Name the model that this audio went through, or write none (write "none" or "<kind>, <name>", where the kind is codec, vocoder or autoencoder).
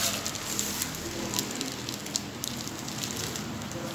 none